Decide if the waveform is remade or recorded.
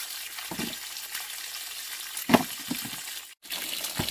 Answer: recorded